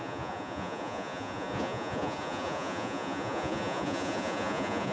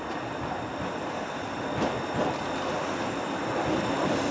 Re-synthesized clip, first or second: first